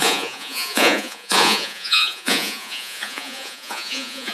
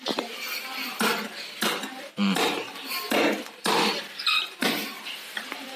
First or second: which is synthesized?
first